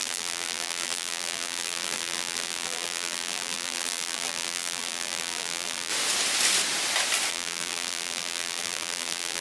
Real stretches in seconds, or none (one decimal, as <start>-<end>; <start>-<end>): 5.9-7.3